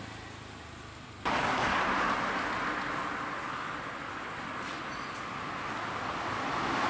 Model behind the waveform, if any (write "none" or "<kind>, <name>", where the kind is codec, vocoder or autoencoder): none